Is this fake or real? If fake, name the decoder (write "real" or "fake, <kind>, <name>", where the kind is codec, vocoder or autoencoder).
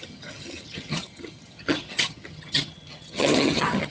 fake, vocoder, HiFi-GAN